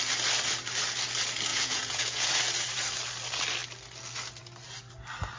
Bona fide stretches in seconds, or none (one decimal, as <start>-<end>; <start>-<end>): 0.0-1.5; 2.3-5.4